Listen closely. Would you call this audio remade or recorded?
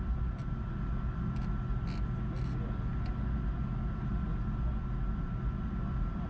recorded